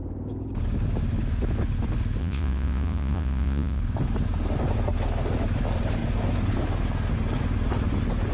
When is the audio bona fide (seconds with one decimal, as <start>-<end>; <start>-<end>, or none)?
0.0-2.2; 3.8-8.3